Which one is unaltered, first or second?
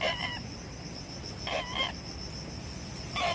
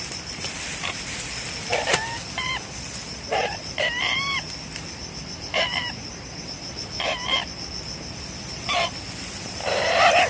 first